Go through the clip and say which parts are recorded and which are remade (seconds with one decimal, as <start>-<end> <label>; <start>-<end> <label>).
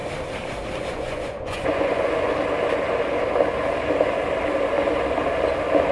0.0-0.8 recorded; 0.8-2.3 remade; 2.3-5.9 recorded